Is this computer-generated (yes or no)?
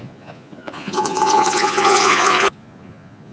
yes